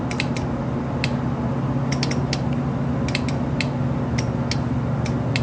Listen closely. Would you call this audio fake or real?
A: real